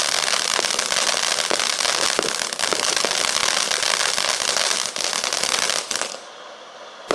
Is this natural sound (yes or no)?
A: yes